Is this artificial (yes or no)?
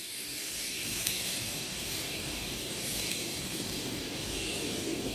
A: yes